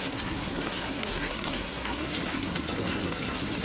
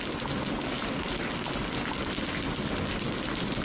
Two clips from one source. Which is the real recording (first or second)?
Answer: second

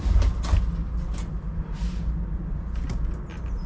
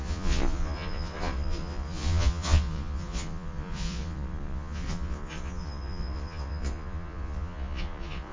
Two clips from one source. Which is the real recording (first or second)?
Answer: first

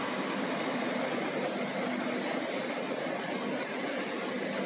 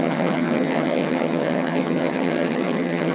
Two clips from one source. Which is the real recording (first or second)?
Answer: first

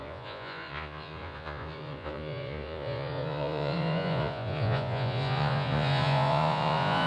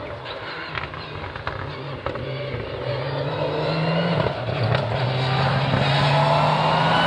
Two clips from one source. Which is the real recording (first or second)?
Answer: second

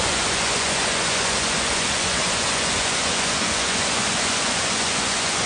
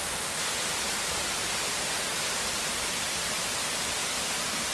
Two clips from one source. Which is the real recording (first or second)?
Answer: second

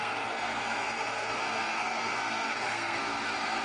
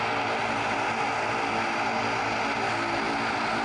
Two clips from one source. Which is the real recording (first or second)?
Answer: second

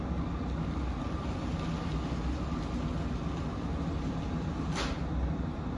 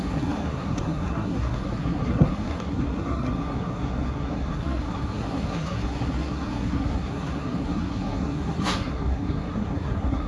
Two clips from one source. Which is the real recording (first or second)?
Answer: first